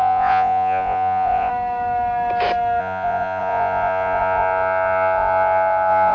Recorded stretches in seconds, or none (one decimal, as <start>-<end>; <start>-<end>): 1.5-2.8